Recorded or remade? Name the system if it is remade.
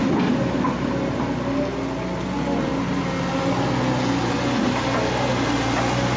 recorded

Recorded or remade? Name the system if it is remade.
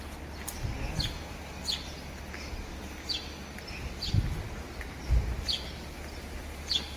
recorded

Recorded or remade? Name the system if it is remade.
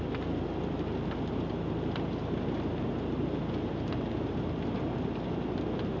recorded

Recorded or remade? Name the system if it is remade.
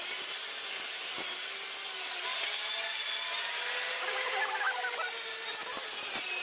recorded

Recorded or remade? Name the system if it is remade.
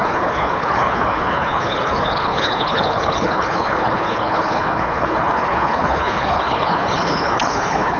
remade, codec, HILCodec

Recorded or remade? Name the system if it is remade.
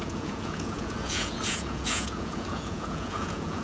remade, vocoder, Vocos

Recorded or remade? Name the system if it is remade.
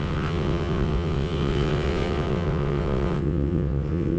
remade, vocoder, WaveNeXt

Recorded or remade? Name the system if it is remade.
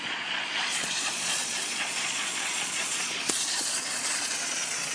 remade, vocoder, Vocos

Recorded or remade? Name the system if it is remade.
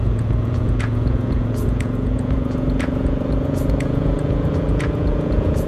remade, vocoder, Vocos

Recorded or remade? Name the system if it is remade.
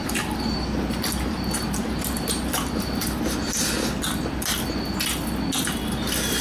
recorded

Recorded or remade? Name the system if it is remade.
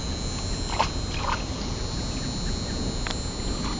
recorded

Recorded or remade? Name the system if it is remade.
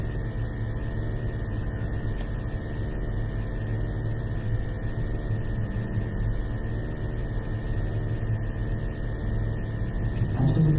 recorded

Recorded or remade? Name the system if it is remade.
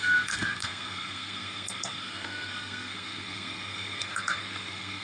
remade, codec, SNAC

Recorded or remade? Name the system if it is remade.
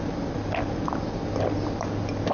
recorded